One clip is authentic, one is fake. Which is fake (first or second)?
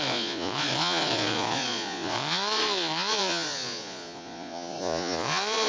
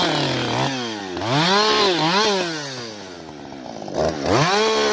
first